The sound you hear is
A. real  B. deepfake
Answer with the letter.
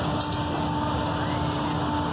A